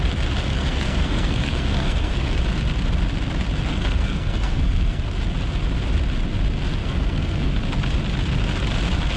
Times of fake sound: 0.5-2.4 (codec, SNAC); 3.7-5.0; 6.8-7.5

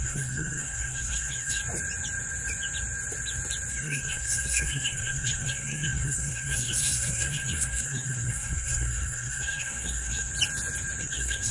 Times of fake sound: 0.0-1.6 (codec, SNAC); 3.7-10.3; 11.0-11.5

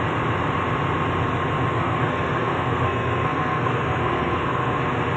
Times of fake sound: 1.7-4.8 (codec, SNAC)

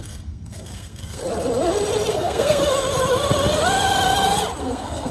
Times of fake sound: 0.0-1.2 (codec, SNAC); 2.1-2.6; 4.6-5.1

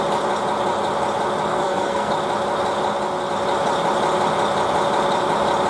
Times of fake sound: 1.5-2.1 (codec, SNAC)

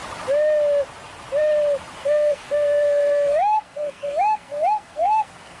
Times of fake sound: 2.0-5.6 (codec, SNAC)